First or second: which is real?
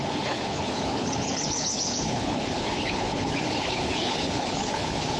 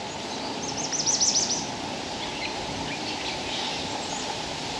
second